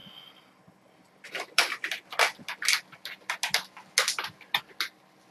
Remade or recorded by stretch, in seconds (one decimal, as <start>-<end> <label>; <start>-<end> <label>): 0.0-5.3 recorded